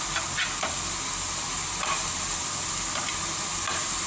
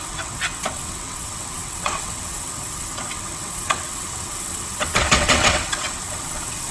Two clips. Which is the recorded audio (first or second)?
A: first